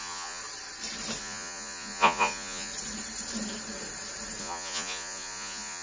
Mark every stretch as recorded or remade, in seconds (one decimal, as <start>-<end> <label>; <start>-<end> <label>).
0.0-0.4 remade; 0.4-1.2 recorded; 1.2-2.7 remade; 2.7-4.4 recorded; 4.4-5.8 remade